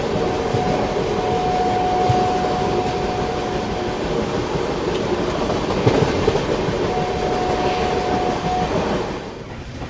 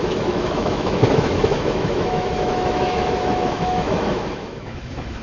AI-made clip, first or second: second